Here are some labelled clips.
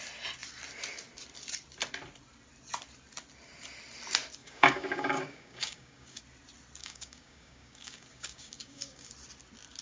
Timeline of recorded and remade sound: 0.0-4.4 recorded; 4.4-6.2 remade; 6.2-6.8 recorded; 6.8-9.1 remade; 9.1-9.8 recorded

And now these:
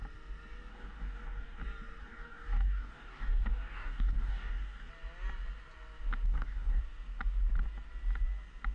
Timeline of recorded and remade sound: 0.0-0.7 recorded; 0.7-1.6 remade; 1.6-2.0 recorded; 2.0-4.9 remade; 4.9-6.3 recorded; 6.3-6.8 remade; 6.8-8.7 recorded

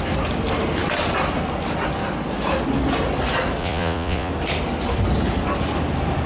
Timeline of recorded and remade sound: 0.0-3.6 recorded; 3.6-4.3 remade; 4.3-6.3 recorded

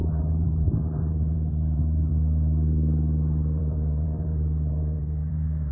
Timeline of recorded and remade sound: 0.0-2.1 remade; 2.1-3.6 recorded; 3.6-5.7 remade